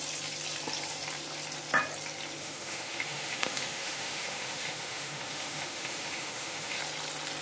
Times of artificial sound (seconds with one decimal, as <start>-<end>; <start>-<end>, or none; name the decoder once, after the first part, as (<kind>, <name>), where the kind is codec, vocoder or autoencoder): 2.4-6.8 (autoencoder, DAC-VAE)